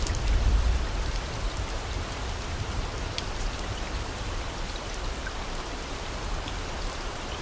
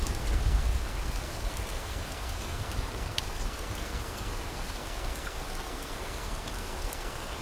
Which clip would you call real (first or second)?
first